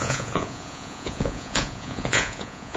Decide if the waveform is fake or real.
fake